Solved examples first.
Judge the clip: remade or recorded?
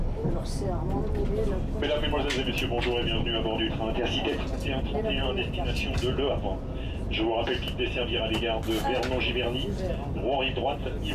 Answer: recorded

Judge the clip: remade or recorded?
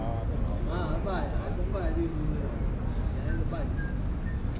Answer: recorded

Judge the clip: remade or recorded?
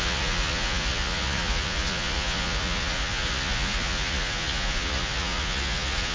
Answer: remade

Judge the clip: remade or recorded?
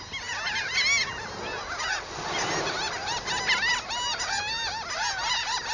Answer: recorded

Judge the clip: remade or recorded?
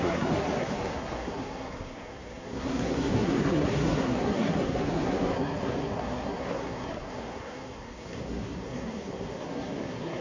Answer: remade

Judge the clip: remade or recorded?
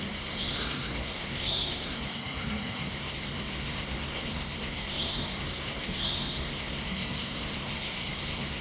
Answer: remade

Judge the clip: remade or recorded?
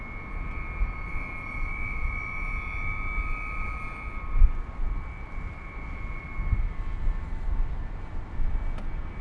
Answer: recorded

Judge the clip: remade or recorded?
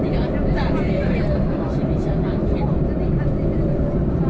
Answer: remade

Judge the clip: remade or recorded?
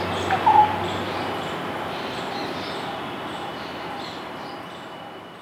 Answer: recorded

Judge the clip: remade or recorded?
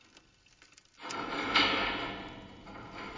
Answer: recorded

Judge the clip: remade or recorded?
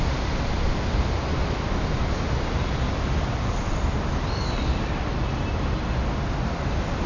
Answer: recorded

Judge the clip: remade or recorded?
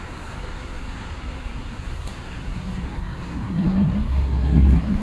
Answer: remade